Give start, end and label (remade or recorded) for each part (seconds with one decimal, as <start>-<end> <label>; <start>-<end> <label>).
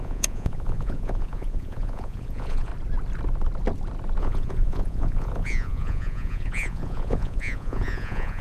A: 0.0-2.7 remade; 2.7-4.2 recorded; 4.2-8.4 remade